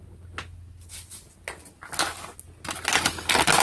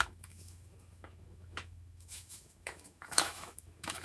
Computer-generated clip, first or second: second